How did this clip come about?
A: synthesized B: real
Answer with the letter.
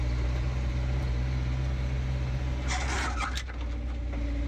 B